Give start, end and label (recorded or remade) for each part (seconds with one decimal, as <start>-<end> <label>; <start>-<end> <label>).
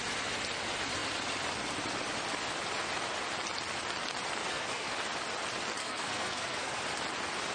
0.0-4.4 recorded; 4.4-4.9 remade; 4.9-5.8 recorded; 5.8-6.8 remade; 6.8-7.5 recorded